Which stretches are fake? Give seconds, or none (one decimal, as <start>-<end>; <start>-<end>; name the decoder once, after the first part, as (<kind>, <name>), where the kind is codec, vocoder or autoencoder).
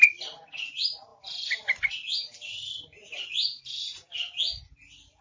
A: none